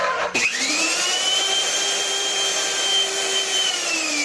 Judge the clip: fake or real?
fake